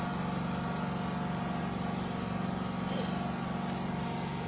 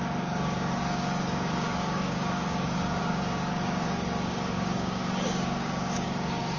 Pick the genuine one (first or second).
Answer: first